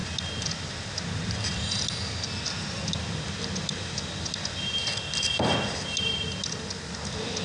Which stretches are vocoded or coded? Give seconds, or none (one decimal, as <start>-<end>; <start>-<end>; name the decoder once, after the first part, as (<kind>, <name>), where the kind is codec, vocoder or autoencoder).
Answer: 2.4-4.8 (vocoder, BigVGAN v2); 5.3-7.4